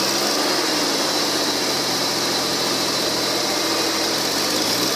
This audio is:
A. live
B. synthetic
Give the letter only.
A